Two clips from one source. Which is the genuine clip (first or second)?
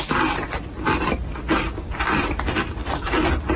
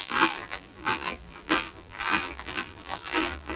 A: first